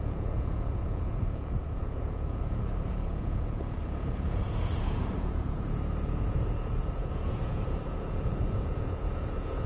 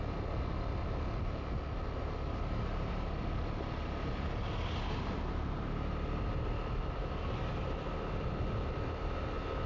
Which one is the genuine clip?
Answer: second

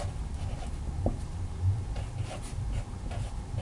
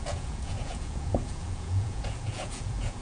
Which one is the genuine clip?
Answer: first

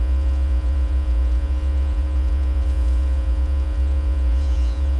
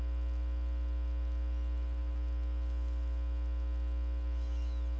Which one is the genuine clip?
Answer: second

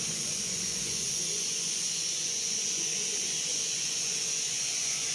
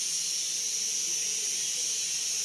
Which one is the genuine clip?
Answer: second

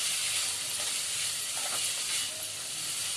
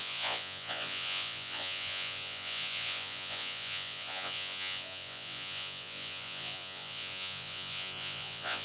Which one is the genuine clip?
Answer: first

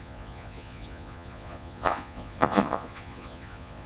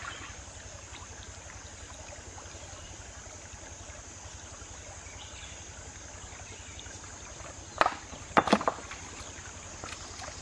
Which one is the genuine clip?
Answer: second